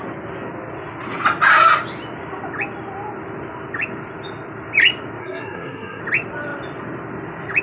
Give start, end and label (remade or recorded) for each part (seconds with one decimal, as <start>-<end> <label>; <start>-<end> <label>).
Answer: 0.0-5.2 recorded; 5.2-6.0 remade; 6.0-7.6 recorded